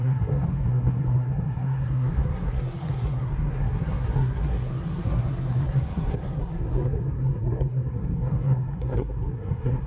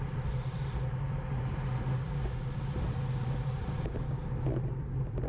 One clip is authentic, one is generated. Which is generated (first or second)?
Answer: first